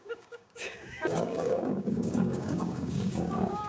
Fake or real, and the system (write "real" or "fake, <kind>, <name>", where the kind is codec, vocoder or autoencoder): fake, codec, DAC